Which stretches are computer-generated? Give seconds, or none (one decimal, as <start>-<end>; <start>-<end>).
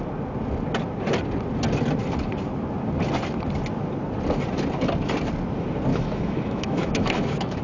5.9-7.6